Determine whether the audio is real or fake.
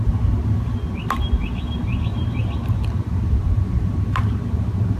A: real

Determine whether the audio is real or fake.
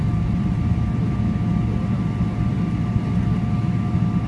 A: real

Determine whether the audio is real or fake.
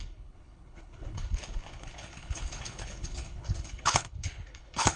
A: fake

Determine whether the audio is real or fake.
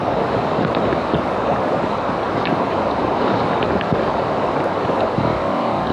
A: fake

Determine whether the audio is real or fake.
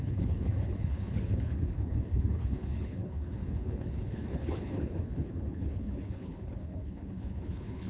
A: fake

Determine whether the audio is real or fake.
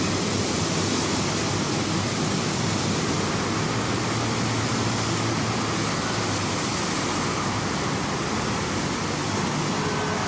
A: real